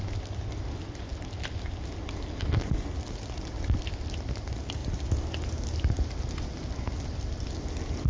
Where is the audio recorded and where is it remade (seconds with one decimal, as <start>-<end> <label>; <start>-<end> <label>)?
0.0-8.1 recorded